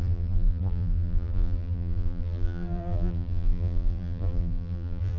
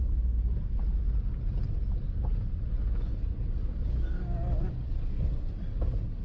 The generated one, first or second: first